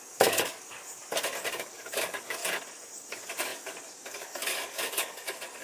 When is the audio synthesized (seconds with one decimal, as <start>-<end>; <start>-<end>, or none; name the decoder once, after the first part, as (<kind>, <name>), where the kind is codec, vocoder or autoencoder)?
0.0-1.0 (codec, DAC); 1.5-2.4; 3.0-5.6